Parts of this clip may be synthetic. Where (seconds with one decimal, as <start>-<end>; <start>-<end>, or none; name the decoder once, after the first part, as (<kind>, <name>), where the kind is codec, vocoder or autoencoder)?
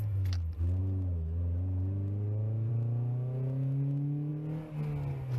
none